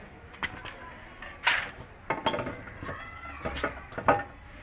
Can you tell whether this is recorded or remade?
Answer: recorded